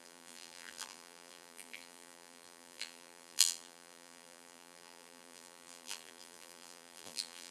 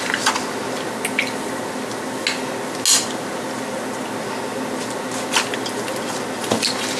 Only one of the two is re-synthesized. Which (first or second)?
first